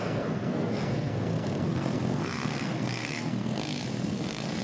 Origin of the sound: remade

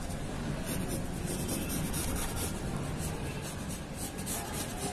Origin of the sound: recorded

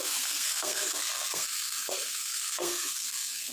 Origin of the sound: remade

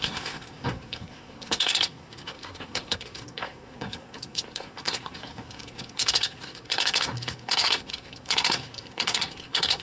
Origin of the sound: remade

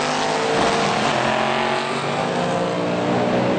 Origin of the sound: recorded